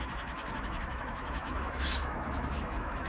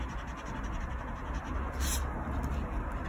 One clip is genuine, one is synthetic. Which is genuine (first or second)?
second